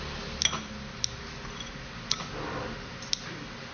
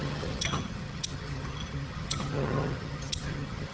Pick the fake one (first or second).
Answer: second